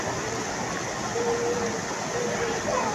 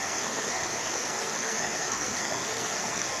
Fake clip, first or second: second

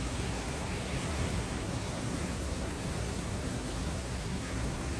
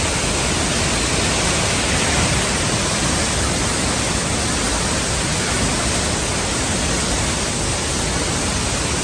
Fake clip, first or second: first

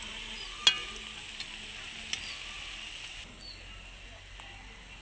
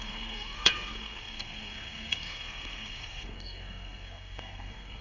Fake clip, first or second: second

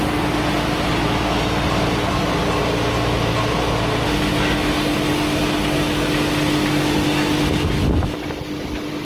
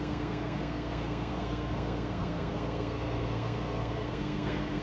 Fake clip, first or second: second